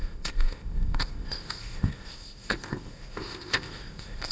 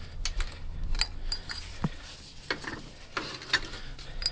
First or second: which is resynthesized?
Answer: first